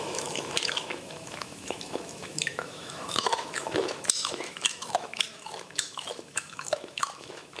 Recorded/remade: remade